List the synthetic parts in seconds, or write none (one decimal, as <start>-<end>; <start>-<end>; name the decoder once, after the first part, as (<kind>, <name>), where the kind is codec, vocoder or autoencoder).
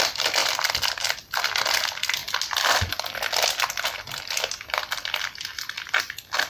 0.4-1.1 (vocoder, BigVGAN v2)